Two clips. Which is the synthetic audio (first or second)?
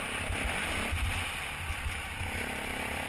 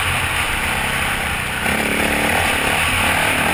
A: first